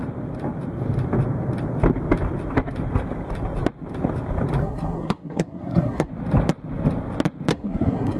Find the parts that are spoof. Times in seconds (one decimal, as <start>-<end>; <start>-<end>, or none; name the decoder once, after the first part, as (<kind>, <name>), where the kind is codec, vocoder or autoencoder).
4.6-6.1 (codec, SNAC); 7.5-8.2